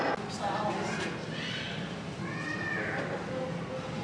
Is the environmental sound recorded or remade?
recorded